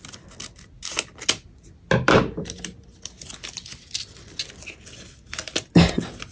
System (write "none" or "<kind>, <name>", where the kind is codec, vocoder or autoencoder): none